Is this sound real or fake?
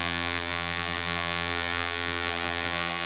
fake